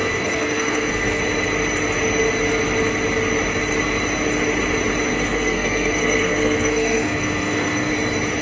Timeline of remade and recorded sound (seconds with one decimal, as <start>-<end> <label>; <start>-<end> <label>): 0.0-1.2 remade; 1.2-5.1 recorded; 5.1-7.9 remade; 7.9-8.4 recorded